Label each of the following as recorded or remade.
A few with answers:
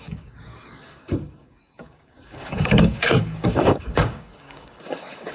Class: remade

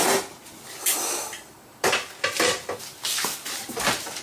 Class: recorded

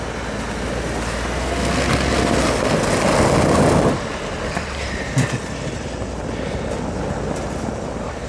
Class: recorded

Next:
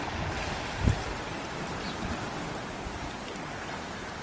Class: recorded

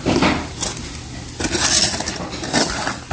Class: recorded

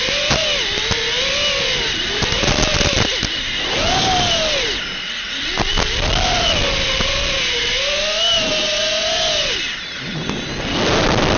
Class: recorded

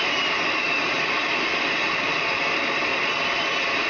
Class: recorded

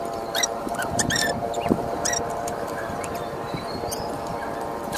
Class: remade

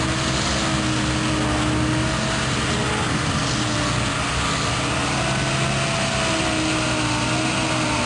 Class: recorded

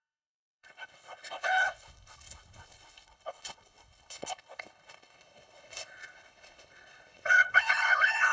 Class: remade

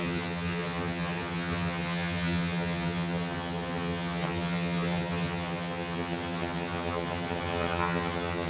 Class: remade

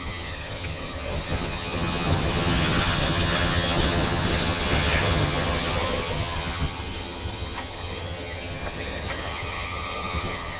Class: remade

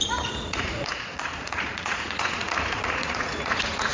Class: remade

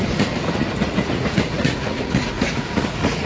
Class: remade